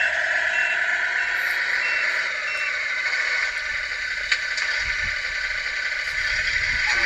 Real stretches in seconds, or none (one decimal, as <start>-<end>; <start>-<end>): 0.0-7.1